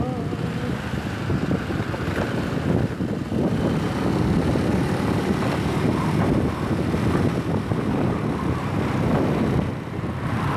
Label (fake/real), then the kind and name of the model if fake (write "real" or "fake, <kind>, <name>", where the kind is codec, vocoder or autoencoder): real